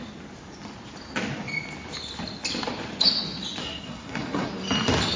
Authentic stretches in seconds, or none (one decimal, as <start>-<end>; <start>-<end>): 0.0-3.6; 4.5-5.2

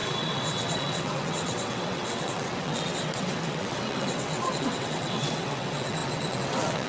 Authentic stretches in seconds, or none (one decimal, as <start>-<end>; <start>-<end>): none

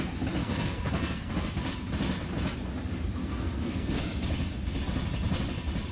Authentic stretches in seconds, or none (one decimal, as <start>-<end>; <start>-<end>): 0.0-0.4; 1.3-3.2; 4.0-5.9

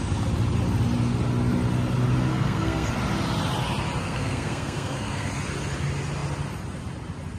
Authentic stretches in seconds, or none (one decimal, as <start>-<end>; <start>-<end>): 0.0-2.3; 2.9-4.0; 5.3-7.4

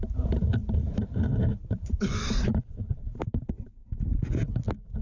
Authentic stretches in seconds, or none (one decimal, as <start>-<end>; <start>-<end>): 0.6-1.7; 3.8-5.0

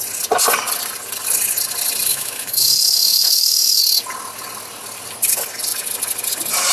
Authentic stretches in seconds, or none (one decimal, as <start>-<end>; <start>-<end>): 0.0-2.1; 3.8-6.7

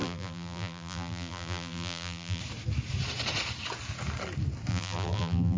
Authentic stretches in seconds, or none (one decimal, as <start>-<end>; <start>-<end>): 2.4-4.7

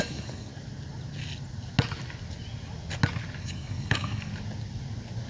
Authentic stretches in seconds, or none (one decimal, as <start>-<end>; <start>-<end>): 0.5-3.4; 4.3-5.3